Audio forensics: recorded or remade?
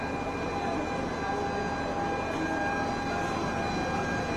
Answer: recorded